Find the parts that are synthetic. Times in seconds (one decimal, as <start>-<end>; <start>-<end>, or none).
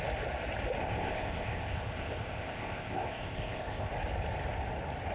0.8-3.9